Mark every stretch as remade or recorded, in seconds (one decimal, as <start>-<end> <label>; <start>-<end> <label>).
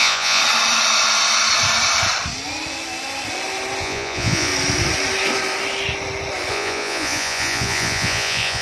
0.0-0.4 remade; 0.4-3.8 recorded; 3.8-4.5 remade; 4.5-6.5 recorded; 6.5-8.6 remade